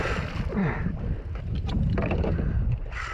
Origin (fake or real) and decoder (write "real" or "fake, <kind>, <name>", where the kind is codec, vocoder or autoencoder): real